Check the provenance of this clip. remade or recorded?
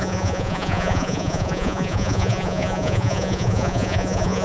remade